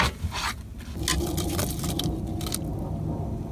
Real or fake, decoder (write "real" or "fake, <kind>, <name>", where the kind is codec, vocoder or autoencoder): real